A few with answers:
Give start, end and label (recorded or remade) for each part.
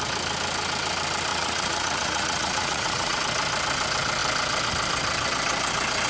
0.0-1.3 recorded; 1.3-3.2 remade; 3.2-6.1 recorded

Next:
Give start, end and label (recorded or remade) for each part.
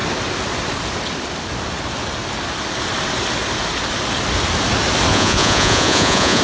0.0-5.1 recorded; 5.1-6.4 remade